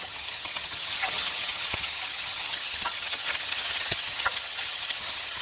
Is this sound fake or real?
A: fake